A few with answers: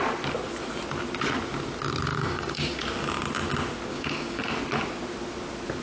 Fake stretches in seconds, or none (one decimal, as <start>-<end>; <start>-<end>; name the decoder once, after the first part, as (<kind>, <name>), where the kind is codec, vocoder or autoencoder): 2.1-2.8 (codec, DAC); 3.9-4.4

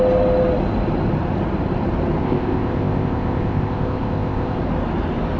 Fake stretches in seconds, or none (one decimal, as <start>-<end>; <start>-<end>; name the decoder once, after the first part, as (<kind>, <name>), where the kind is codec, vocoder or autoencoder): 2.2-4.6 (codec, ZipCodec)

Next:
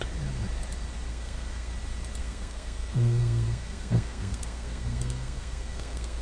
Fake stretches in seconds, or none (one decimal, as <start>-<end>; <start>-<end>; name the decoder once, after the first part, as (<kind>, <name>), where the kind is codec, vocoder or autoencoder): 1.1-1.7 (codec, SNAC); 2.2-6.2

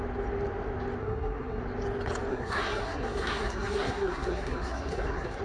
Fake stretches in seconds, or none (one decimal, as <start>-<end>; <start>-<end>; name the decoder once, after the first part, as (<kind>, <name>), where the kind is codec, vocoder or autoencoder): 1.0-1.6 (codec, SNAC); 2.3-5.4

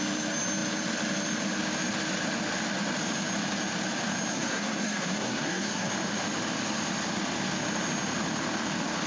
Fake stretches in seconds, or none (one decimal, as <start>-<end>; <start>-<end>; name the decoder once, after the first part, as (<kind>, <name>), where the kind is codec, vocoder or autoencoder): 4.3-5.9 (codec, SNAC)

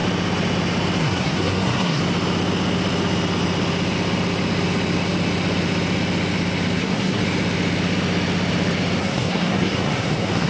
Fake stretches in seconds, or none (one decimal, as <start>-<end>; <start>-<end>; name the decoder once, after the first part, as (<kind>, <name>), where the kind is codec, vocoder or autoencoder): 1.0-2.0 (codec, SNAC); 6.8-7.2; 9.0-10.5

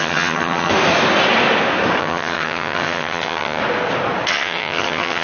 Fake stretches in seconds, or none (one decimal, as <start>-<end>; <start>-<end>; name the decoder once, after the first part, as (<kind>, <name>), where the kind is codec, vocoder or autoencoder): 0.0-0.7 (vocoder, HiFi-GAN); 2.0-3.6; 4.3-5.2